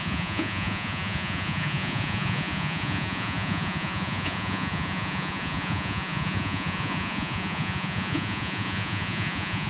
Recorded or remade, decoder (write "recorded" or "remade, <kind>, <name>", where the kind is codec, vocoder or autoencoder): remade, vocoder, Vocos